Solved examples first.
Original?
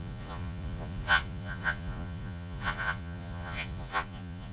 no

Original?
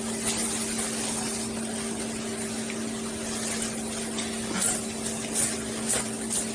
yes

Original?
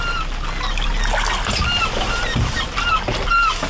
yes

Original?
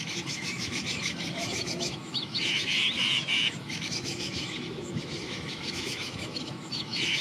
no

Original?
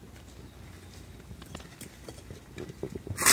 yes